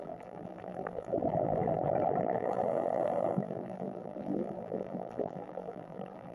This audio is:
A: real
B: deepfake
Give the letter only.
B